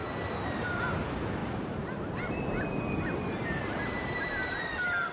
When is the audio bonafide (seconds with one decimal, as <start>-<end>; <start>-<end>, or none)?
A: 0.0-1.4; 4.5-5.1